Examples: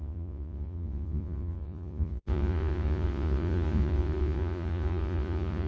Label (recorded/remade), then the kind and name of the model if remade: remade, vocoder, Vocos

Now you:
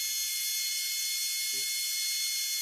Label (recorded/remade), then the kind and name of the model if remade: recorded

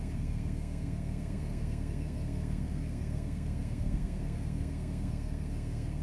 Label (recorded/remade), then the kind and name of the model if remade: remade, codec, SNAC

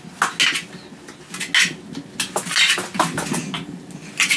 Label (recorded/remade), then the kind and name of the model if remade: recorded